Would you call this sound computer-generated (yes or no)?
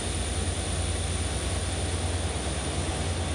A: no